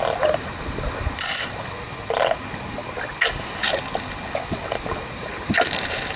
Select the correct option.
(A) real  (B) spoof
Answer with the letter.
A